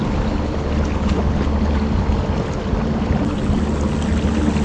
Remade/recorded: recorded